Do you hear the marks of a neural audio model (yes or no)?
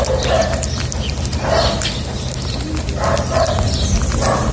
yes